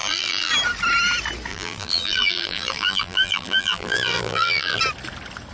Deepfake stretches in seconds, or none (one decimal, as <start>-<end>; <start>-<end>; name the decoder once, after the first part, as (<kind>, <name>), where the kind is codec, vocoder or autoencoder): 0.0-0.5 (vocoder, BigVGAN v2); 1.5-4.8